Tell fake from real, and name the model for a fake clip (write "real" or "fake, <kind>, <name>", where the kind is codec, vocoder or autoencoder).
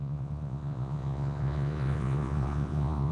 fake, vocoder, Vocos